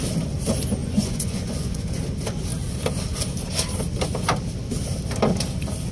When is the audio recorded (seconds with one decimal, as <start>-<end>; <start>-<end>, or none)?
0.0-0.8; 1.9-5.9